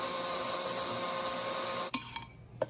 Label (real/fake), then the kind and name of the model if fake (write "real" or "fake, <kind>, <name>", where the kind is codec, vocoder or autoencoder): real